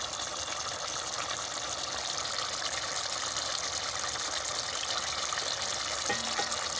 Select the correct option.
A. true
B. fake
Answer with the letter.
A